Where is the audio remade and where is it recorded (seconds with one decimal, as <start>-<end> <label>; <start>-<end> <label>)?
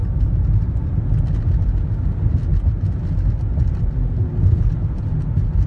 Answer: 0.0-5.7 recorded